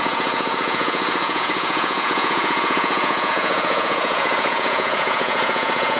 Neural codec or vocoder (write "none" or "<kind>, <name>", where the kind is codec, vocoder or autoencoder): vocoder, Vocos